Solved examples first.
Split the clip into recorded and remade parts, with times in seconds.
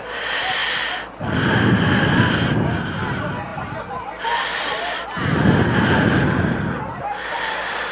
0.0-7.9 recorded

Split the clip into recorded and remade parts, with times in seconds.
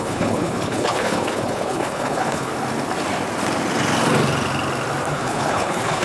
0.0-2.5 remade; 2.5-5.1 recorded; 5.1-6.0 remade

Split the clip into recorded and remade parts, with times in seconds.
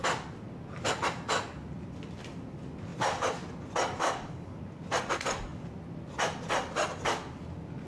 0.0-4.0 recorded; 4.0-4.6 remade; 4.6-7.9 recorded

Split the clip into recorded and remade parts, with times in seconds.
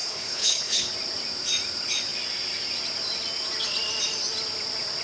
0.0-0.9 remade; 0.9-5.0 recorded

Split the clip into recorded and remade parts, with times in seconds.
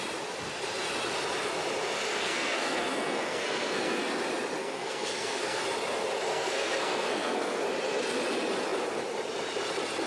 0.0-2.1 recorded; 2.1-4.0 remade; 4.0-4.6 recorded; 4.6-5.6 remade; 5.6-6.3 recorded; 6.3-7.6 remade; 7.6-10.1 recorded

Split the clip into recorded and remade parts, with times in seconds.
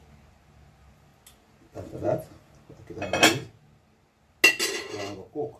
0.0-5.6 recorded